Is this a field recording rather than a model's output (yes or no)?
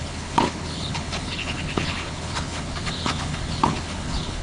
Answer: no